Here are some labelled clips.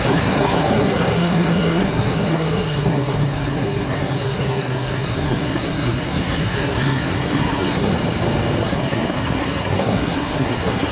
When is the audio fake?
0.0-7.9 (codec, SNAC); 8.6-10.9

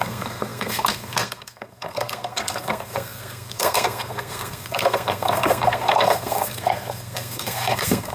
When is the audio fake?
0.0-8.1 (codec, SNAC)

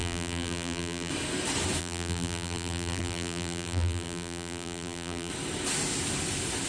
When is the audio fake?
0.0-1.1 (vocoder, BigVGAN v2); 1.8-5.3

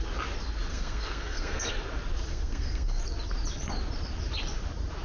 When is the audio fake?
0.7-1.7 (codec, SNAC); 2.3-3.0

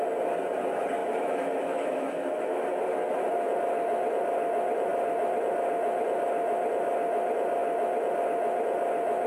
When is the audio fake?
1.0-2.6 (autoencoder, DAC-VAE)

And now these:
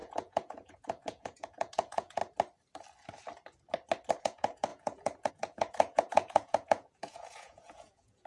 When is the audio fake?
0.0-2.2 (vocoder, Vocos); 4.2-8.3

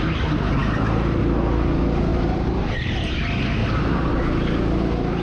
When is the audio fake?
2.1-2.6 (vocoder, BigVGAN v2); 3.6-4.2

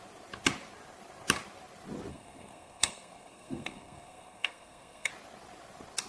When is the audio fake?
2.1-5.1 (codec, SNAC)